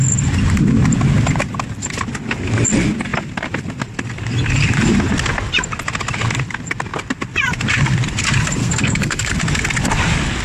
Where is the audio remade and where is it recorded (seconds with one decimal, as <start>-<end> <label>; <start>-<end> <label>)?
0.0-8.6 recorded; 8.6-9.3 remade; 9.3-10.4 recorded